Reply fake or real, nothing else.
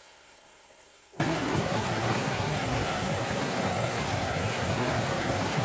fake